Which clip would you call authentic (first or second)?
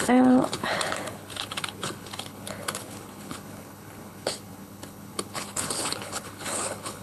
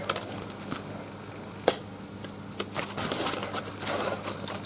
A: second